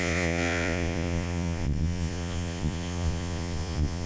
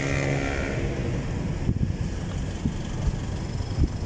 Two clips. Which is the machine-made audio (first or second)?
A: first